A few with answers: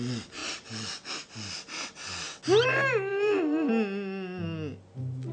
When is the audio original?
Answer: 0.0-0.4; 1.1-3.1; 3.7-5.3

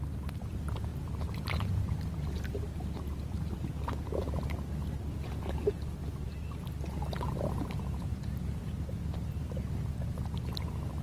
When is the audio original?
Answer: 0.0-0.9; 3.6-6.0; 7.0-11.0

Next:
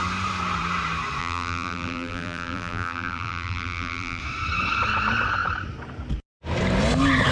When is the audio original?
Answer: 0.0-1.2; 4.2-7.3